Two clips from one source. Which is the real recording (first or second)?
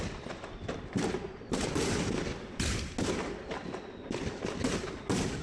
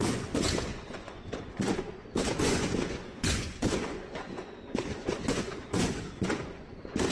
first